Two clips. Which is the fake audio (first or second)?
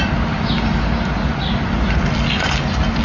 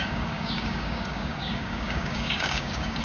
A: second